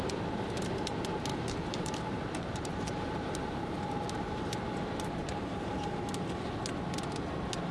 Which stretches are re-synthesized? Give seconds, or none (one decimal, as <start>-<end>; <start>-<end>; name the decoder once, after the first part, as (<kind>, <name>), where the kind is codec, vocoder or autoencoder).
1.3-4.4 (vocoder, BigVGAN v2); 5.2-5.9